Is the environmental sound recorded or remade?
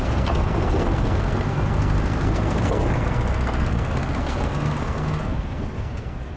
remade